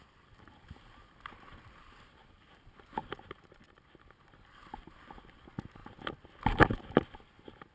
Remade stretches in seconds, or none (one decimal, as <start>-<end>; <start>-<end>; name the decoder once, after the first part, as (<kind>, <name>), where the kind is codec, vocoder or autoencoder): none